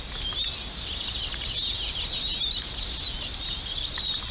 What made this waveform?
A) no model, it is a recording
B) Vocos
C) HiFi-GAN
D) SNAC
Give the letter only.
A